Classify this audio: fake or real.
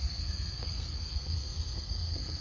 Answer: fake